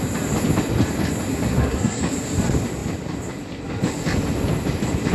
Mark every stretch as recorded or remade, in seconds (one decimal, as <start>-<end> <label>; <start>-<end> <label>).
0.0-1.3 recorded; 1.3-2.0 remade; 2.0-5.1 recorded